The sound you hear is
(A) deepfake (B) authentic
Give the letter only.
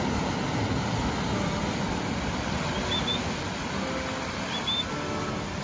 B